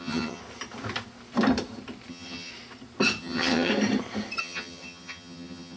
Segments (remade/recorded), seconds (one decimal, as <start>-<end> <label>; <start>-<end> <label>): 0.0-0.4 remade; 0.4-2.1 recorded; 2.1-2.5 remade; 2.5-3.2 recorded; 3.2-3.7 remade; 3.7-4.4 recorded; 4.4-5.8 remade